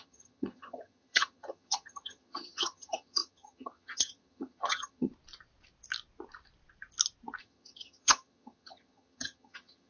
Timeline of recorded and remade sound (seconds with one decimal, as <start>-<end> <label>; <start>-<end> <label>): 0.0-5.1 remade; 5.1-7.4 recorded; 7.4-9.9 remade